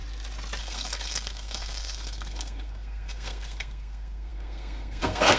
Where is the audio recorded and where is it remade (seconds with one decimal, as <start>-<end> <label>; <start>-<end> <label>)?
0.0-0.6 recorded; 0.6-5.4 remade

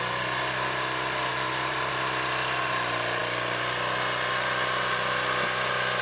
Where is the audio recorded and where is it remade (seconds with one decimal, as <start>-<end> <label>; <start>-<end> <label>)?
0.0-1.3 recorded; 1.3-1.9 remade; 1.9-6.0 recorded

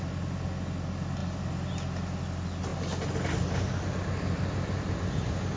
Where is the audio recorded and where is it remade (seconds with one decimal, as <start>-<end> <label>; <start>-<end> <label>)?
0.0-5.6 recorded

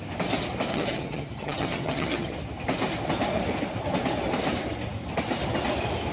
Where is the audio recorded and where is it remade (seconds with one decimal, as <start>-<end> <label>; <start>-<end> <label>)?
0.0-0.7 recorded; 0.7-2.3 remade; 2.3-6.1 recorded

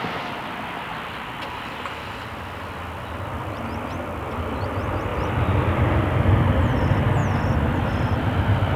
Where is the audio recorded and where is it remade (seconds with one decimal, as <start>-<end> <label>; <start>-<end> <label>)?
0.0-0.9 recorded; 0.9-3.6 remade; 3.6-5.1 recorded; 5.1-6.3 remade; 6.3-8.8 recorded